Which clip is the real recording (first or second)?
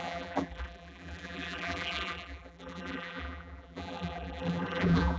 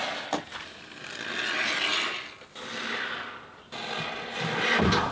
second